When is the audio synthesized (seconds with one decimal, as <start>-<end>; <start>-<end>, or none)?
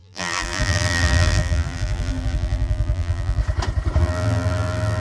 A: 0.0-3.4; 4.0-5.0